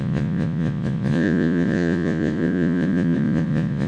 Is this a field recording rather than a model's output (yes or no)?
no